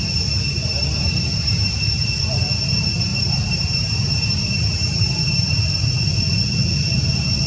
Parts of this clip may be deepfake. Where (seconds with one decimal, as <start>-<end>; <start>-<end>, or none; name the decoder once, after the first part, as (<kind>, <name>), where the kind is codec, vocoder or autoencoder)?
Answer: 0.6-1.7 (vocoder, BigVGAN v2); 3.1-5.6